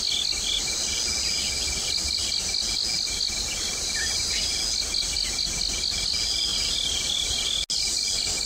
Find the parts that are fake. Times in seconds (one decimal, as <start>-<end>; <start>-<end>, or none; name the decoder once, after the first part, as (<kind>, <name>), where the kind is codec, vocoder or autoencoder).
none